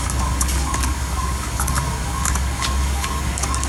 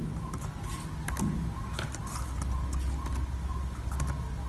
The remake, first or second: first